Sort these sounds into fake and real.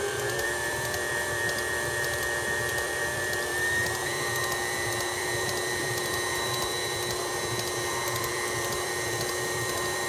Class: fake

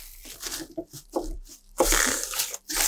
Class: fake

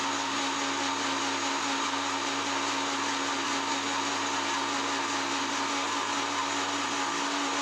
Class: real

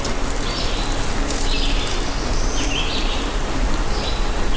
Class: real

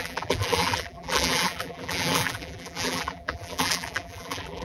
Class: fake